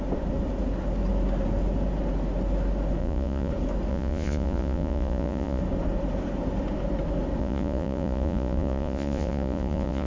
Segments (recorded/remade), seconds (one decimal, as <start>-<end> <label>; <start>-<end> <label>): 0.0-3.0 recorded; 3.0-3.5 remade; 3.5-3.9 recorded; 3.9-5.6 remade; 5.6-7.4 recorded; 7.4-10.1 remade